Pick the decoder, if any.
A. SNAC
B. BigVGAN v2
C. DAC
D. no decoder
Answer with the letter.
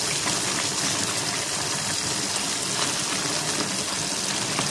D